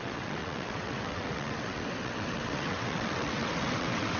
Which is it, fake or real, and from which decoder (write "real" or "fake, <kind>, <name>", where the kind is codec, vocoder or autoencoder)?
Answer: fake, vocoder, WaveNeXt